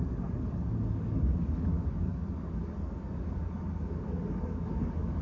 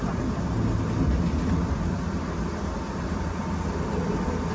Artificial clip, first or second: first